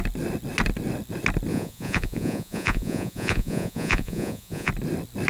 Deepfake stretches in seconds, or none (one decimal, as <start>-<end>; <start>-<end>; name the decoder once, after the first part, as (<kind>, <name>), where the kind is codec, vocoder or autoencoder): 1.5-4.7 (vocoder, Vocos)